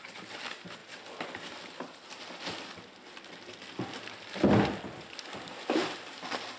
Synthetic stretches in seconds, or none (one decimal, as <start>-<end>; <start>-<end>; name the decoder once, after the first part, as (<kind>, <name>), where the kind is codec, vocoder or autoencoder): none